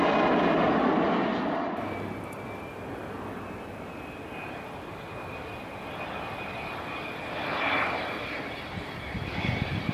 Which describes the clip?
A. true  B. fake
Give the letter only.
A